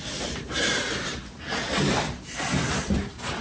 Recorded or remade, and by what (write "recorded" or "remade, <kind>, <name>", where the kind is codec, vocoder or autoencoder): recorded